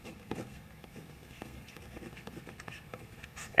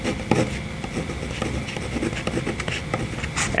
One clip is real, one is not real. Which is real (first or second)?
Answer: second